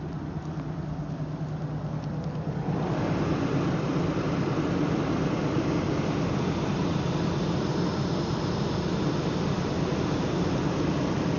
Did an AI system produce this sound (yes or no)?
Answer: no